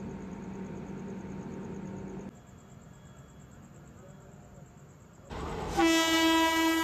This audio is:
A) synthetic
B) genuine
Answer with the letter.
B